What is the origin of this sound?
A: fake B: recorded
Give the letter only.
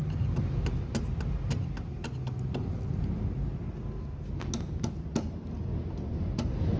B